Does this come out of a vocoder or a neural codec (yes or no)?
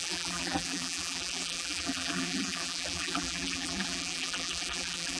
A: yes